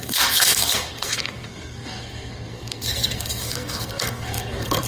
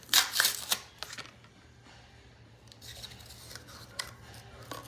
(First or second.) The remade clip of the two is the first